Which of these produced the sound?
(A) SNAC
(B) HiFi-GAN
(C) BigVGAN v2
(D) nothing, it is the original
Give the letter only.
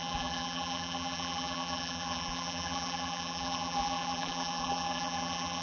C